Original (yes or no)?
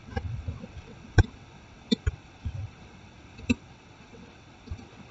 no